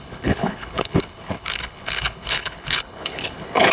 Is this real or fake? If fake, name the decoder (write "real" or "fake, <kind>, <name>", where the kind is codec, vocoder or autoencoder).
fake, codec, HILCodec